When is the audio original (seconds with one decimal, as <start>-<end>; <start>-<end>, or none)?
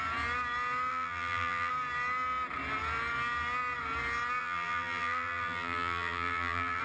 0.0-0.9; 1.7-4.4